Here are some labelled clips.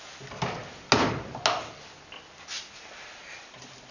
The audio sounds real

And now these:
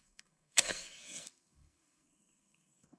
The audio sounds fake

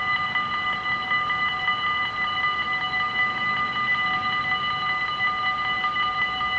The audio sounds real